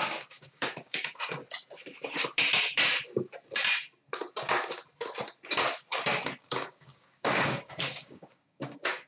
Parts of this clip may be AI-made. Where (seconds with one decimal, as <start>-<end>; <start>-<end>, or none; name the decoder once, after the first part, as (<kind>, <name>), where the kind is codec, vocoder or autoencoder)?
0.0-1.4 (codec, DAC); 6.4-9.1